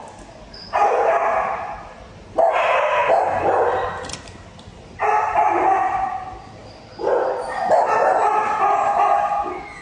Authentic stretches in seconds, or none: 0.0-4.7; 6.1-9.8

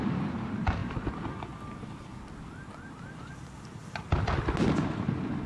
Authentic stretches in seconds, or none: 0.0-5.5

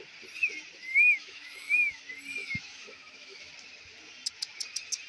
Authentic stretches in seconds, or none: 0.0-1.2; 2.0-2.4; 3.5-5.1

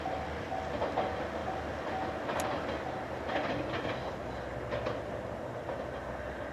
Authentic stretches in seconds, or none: 0.0-6.5

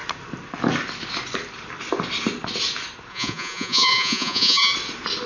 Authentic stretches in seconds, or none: 0.0-3.1; 4.7-5.3

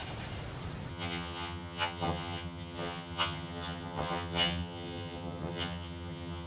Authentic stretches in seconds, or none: 0.0-0.9

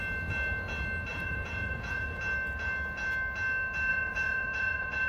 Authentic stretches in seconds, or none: 0.0-1.1; 2.2-3.9

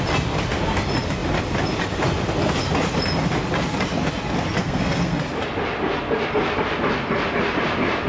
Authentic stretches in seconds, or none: 0.0-4.6; 5.2-8.1